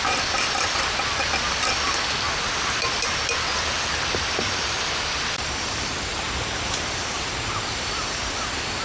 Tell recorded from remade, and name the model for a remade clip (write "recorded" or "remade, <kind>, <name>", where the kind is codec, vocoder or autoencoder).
recorded